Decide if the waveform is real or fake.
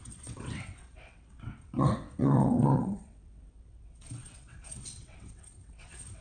fake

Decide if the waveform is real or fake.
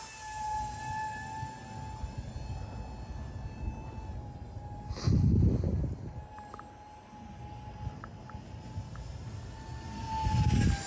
real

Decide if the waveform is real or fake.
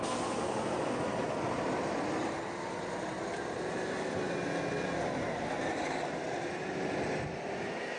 real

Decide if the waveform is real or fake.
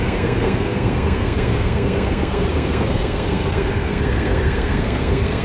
fake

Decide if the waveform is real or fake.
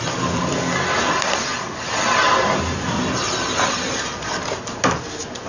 real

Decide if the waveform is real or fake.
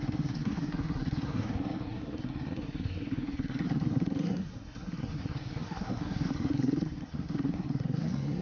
fake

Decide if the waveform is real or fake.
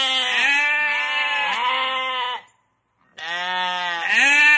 real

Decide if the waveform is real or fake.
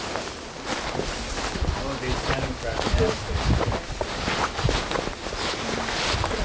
real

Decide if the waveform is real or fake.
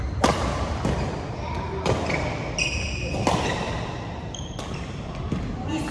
real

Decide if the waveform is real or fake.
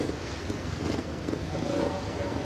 fake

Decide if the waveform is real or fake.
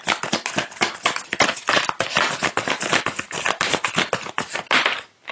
real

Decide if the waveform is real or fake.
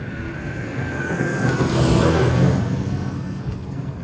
fake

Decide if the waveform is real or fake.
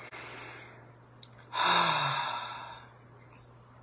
real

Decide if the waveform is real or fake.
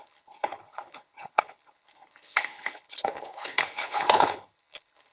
fake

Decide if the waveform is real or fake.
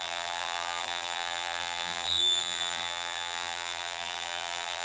fake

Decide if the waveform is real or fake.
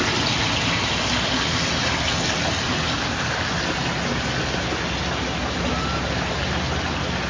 real